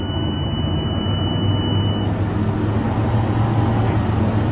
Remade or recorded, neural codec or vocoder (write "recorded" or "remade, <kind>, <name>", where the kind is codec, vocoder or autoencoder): recorded